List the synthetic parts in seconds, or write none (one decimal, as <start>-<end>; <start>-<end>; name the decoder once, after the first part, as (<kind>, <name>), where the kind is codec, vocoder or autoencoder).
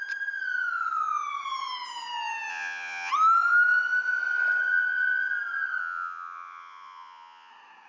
2.5-3.1 (vocoder, Vocos); 5.8-7.5